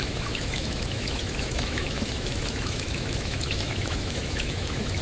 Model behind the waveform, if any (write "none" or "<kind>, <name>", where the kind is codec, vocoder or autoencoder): autoencoder, DAC-VAE